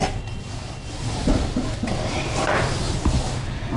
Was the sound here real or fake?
real